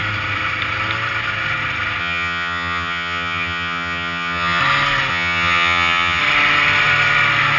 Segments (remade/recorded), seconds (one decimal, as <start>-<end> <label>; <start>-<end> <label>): 0.0-2.0 recorded; 2.0-4.6 remade; 4.6-5.1 recorded; 5.1-6.2 remade; 6.2-7.6 recorded